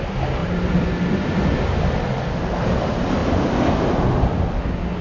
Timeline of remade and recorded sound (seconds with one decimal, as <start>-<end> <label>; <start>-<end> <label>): 0.0-5.0 recorded